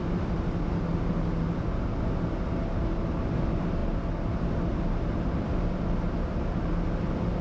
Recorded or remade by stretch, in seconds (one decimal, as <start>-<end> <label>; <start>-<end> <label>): 0.0-0.9 remade; 0.9-3.2 recorded; 3.2-3.8 remade; 3.8-4.6 recorded; 4.6-7.4 remade